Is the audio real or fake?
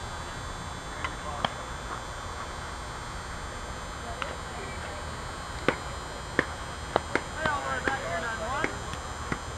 real